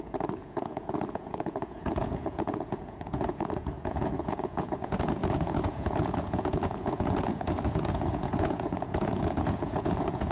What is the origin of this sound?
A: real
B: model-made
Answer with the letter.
B